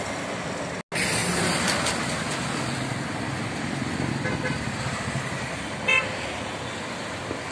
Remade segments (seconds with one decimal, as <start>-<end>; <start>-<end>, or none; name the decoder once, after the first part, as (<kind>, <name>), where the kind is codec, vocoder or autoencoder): 1.2-4.1 (vocoder, BigVGAN v2)